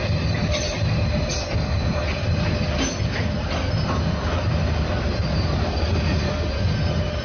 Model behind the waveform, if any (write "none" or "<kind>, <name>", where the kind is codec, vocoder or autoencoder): none